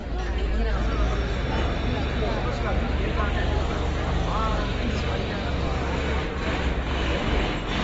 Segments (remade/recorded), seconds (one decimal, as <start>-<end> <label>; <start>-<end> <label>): 0.0-7.8 recorded